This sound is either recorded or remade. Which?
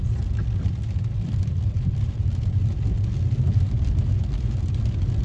recorded